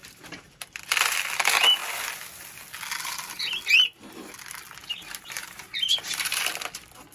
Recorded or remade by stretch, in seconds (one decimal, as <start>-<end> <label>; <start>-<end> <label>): 0.0-0.6 remade; 0.6-4.8 recorded; 4.8-6.4 remade; 6.4-7.1 recorded